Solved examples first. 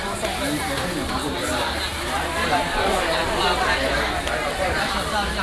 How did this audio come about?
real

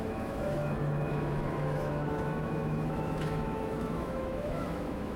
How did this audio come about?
fake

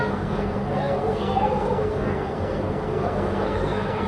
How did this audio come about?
fake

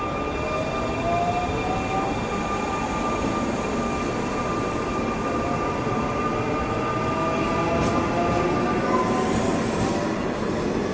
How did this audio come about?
real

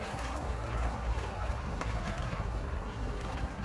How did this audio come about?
fake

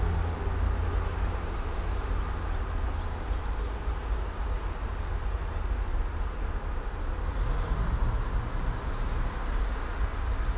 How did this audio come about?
real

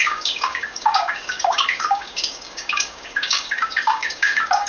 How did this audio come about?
fake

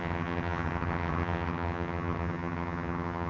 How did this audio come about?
fake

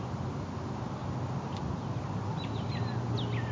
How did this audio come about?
real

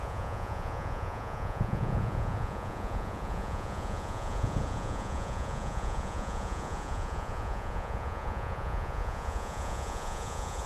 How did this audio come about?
fake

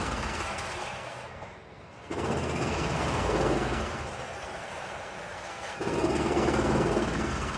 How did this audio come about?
fake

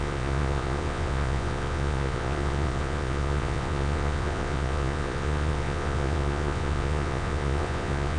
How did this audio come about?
fake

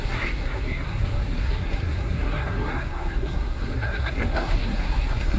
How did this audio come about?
fake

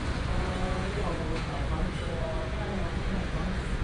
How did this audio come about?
fake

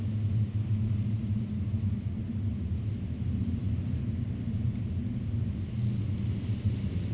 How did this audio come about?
real